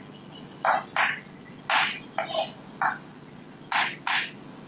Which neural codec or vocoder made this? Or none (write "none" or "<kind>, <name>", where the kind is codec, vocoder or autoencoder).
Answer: none